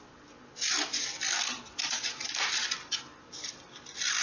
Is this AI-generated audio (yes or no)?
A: no